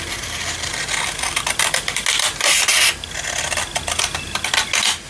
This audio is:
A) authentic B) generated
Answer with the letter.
A